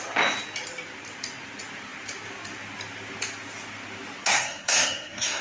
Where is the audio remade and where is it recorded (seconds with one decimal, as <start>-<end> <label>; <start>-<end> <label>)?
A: 0.0-4.2 recorded; 4.2-5.4 remade